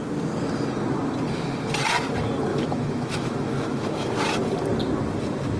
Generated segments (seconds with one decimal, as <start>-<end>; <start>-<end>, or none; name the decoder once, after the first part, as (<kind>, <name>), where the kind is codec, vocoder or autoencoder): 2.5-4.1 (autoencoder, DAC-VAE)